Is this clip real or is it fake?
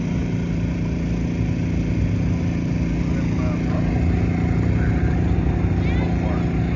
real